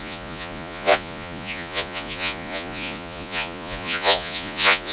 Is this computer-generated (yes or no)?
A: yes